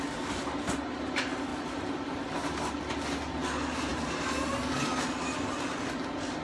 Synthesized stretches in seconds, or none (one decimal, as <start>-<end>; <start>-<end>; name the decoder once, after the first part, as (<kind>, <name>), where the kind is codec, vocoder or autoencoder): 1.5-2.7 (vocoder, BigVGAN v2)